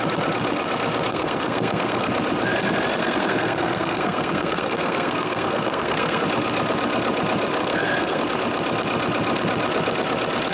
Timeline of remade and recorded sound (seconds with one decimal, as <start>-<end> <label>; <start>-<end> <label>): 0.0-1.1 recorded; 1.1-2.1 remade; 2.1-3.0 recorded; 3.0-6.2 remade; 6.2-7.6 recorded; 7.6-8.2 remade; 8.2-10.5 recorded